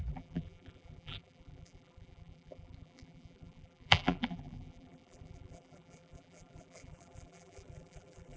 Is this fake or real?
fake